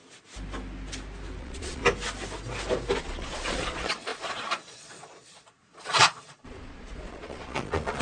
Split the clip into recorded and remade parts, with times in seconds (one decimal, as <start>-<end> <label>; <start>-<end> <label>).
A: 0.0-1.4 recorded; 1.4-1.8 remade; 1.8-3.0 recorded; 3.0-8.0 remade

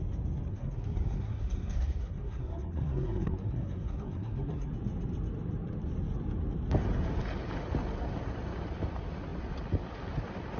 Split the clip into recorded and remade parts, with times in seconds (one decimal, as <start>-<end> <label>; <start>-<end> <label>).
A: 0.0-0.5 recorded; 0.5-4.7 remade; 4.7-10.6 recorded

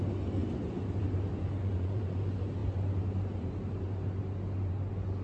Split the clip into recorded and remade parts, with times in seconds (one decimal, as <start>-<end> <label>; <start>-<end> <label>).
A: 0.0-1.6 recorded; 1.6-2.2 remade; 2.2-5.2 recorded